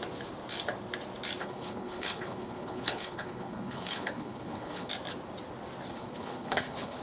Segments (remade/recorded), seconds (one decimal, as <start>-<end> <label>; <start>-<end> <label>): 0.0-1.4 recorded; 1.4-4.9 remade; 4.9-5.9 recorded; 5.9-7.0 remade